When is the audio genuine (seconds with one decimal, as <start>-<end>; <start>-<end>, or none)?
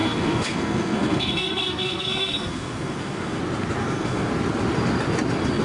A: 3.4-3.8; 4.3-5.6